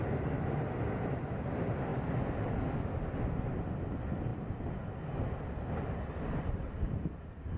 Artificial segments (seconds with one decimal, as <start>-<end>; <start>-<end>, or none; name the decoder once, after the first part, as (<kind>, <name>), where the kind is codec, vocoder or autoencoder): none